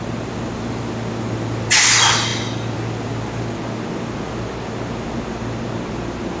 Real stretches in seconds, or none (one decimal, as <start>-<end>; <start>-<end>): 0.0-6.4